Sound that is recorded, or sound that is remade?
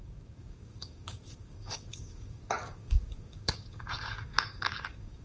remade